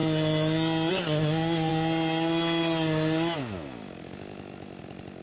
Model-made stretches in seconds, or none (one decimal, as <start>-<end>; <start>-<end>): none